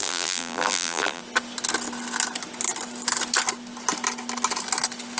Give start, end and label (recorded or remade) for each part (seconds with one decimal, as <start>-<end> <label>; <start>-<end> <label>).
0.0-1.2 remade; 1.2-5.2 recorded